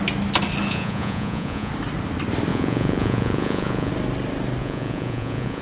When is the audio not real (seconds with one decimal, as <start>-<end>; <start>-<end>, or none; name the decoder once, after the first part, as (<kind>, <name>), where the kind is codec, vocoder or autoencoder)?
0.7-1.7 (vocoder, Vocos); 2.5-3.9; 4.6-5.6